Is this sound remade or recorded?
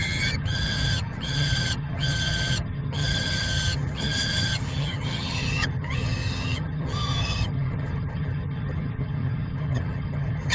remade